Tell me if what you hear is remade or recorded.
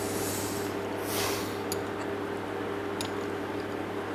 recorded